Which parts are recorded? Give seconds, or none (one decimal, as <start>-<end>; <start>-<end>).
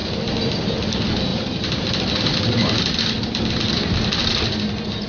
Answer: 0.0-5.1